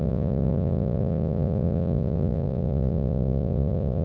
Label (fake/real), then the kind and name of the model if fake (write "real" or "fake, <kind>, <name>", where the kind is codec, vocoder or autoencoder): fake, vocoder, Vocos